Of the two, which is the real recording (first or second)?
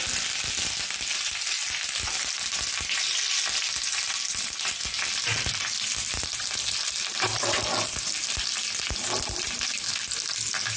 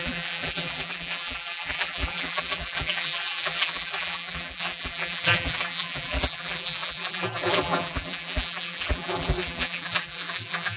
first